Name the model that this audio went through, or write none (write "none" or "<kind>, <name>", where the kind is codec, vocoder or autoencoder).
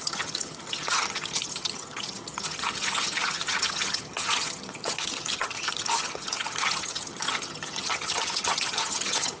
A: vocoder, HiFi-GAN